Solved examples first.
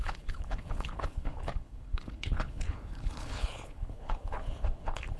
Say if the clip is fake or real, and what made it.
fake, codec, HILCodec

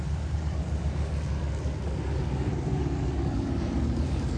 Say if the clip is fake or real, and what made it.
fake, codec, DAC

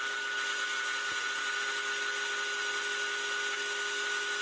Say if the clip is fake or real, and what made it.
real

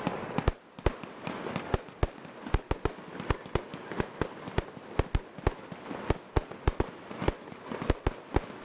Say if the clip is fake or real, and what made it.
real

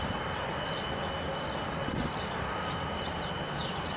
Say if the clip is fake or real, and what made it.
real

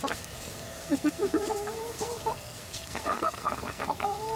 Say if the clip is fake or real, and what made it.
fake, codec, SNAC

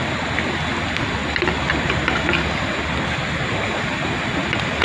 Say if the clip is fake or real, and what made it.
real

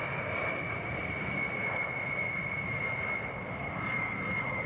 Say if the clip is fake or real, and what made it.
real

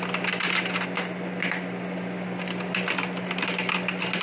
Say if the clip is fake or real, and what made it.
real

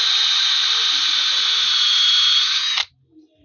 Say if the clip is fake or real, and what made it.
real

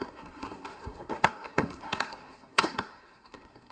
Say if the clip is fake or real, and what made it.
fake, codec, SNAC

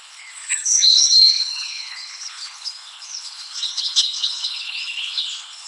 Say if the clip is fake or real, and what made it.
fake, codec, HILCodec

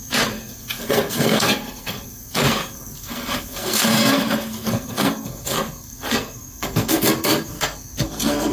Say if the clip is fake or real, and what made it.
fake, codec, SNAC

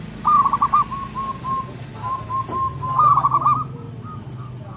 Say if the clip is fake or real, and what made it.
real